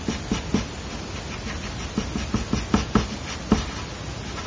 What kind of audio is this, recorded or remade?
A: recorded